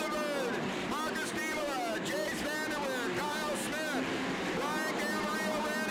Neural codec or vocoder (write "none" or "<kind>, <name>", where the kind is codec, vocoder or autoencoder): none